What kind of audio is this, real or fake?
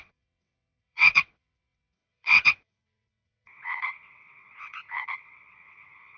fake